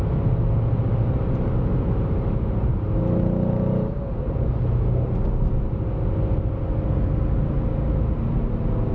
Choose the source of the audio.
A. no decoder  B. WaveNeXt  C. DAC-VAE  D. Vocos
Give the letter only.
A